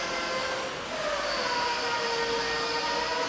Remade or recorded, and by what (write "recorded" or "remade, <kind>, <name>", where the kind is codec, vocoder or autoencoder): recorded